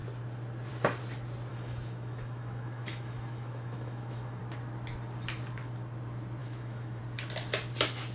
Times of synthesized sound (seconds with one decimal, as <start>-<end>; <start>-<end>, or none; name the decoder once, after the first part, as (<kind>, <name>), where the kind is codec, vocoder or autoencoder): 1.5-4.4 (autoencoder, DAC-VAE); 6.4-7.0